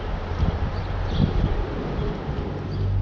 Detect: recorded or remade recorded